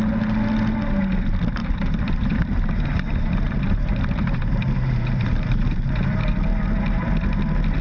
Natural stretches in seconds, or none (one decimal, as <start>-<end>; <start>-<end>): 0.0-1.6; 6.3-7.8